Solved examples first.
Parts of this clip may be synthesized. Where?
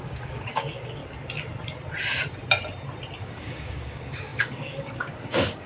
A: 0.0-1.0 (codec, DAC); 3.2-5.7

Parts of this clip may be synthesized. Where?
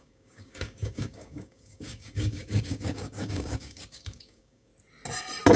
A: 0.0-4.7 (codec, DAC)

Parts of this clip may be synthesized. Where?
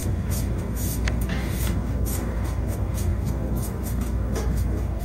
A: 0.0-5.0 (codec, DAC)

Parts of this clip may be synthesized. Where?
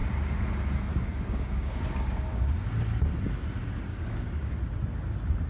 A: 0.9-2.5 (codec, DAC); 3.9-4.5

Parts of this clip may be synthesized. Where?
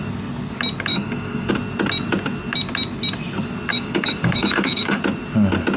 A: 0.9-1.5 (codec, DAC); 3.7-5.0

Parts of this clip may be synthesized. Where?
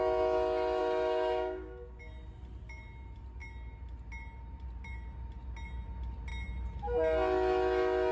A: 0.8-2.0 (codec, DAC)